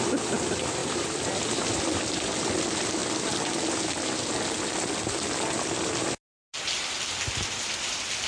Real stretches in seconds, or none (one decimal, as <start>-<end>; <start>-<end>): 0.0-8.3